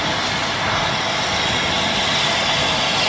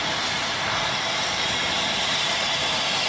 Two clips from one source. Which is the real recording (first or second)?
first